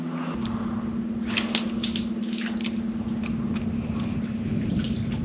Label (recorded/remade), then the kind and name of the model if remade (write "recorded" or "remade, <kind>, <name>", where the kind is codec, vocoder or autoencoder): recorded